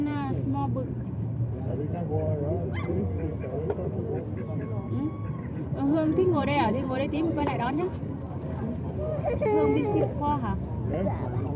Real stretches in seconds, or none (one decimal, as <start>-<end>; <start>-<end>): 3.6-4.8; 9.9-11.6